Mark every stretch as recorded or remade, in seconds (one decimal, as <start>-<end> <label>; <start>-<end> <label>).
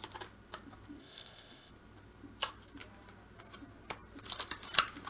0.0-1.0 recorded; 1.0-1.7 remade; 1.7-5.1 recorded